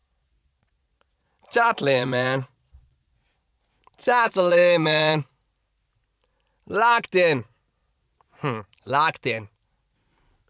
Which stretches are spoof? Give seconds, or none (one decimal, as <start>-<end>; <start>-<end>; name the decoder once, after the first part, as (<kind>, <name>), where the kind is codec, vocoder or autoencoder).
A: 0.0-3.6 (vocoder, Vocos); 4.0-5.3; 7.8-8.9

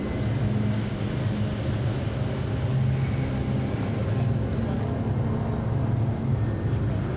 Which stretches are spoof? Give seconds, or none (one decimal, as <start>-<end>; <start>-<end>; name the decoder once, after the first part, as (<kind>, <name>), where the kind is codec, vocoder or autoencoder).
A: 0.4-1.0 (codec, DAC)

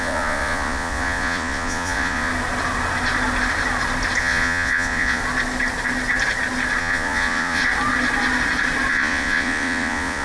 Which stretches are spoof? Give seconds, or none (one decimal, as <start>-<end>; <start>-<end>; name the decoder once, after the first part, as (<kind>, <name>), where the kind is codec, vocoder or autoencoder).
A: 0.0-2.3 (vocoder, Vocos); 4.2-5.2; 6.8-7.6; 8.9-10.2

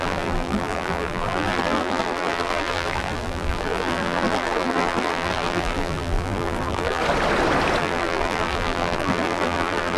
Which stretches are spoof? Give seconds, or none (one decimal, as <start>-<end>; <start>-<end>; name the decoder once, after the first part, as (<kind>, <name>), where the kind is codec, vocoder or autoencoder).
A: 0.0-7.0 (vocoder, BigVGAN v2); 7.8-10.0

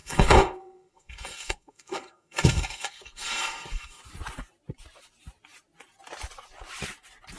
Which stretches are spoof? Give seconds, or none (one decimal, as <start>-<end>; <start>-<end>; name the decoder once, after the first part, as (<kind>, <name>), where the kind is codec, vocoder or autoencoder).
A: 0.0-4.0 (codec, SNAC)

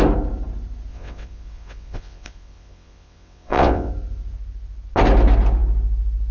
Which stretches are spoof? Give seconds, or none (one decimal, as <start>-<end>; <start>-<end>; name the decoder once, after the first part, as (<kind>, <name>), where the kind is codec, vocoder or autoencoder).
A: 0.9-3.9 (vocoder, WaveNeXt)